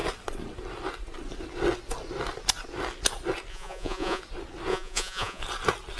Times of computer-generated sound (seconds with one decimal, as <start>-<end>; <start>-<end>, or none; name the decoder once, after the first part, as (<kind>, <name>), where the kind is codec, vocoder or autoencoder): 3.5-4.2 (vocoder, Vocos); 4.7-5.4

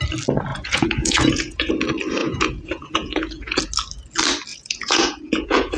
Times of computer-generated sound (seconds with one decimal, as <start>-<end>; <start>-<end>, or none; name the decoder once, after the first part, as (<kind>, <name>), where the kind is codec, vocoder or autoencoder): 0.5-1.7 (vocoder, Vocos); 2.2-3.6; 4.5-5.8

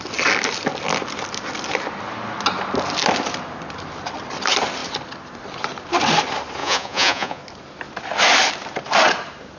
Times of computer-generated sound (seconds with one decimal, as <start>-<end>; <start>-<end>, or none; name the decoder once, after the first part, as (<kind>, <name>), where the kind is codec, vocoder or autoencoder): 6.6-7.4 (vocoder, Vocos)

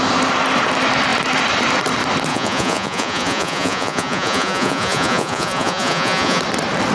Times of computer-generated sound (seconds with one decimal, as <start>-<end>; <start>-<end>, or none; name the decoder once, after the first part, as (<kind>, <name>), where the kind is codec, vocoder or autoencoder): 2.3-6.4 (vocoder, Vocos)

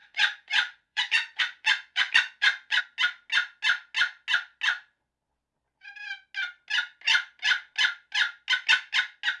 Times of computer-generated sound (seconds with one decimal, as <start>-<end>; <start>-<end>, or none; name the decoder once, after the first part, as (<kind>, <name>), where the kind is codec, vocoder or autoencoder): 0.0-2.8 (vocoder, Vocos)

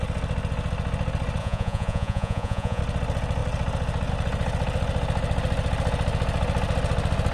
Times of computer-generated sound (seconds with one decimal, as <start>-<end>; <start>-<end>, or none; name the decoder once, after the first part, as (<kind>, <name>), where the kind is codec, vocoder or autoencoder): 1.4-2.8 (vocoder, Vocos)

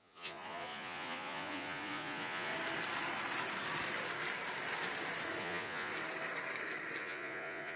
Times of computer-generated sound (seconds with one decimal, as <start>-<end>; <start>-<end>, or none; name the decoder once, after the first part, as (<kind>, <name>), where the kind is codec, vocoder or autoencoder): 0.0-2.5 (vocoder, Vocos); 5.4-5.9; 7.0-7.8

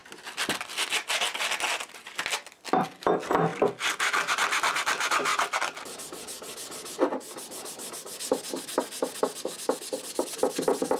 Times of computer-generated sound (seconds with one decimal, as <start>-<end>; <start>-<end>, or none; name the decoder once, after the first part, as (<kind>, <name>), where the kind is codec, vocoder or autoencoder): none